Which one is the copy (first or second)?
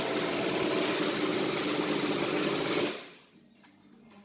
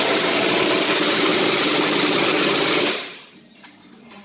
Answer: second